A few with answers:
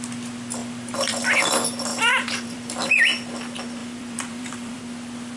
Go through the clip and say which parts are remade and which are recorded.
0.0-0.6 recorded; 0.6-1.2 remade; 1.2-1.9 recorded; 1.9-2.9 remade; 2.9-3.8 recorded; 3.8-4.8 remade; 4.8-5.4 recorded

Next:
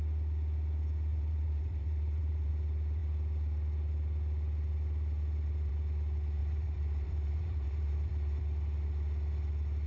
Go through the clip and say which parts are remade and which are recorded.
0.0-1.1 recorded; 1.1-2.5 remade; 2.5-6.4 recorded; 6.4-8.4 remade; 8.4-9.9 recorded